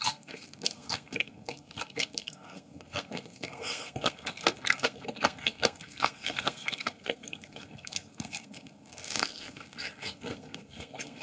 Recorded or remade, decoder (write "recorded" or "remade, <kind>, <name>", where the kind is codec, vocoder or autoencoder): remade, codec, SNAC